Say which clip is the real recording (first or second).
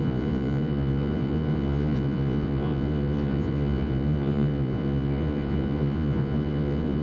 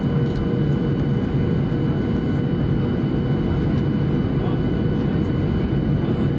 second